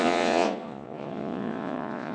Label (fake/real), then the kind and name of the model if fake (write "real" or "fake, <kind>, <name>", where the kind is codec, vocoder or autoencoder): fake, vocoder, Vocos